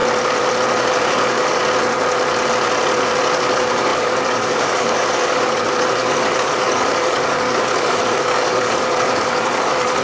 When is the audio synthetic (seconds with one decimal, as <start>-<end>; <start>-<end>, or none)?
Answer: 0.9-1.6; 3.2-10.0